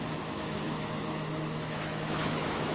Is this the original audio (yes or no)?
no